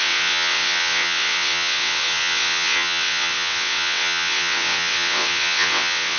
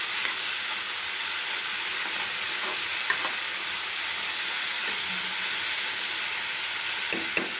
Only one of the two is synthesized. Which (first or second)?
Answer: first